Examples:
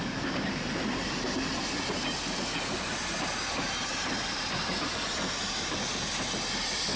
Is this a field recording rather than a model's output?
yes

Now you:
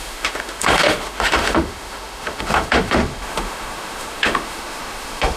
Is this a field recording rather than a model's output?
no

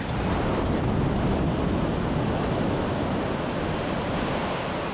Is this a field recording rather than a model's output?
yes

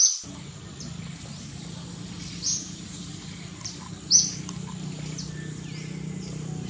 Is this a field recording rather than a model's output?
yes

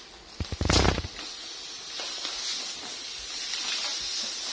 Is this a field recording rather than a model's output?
yes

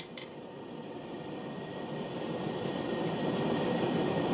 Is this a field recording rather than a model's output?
no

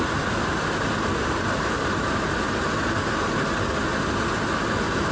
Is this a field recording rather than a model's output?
yes